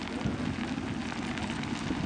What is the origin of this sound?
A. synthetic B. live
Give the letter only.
B